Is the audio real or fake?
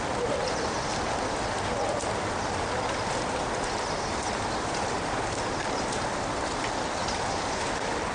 real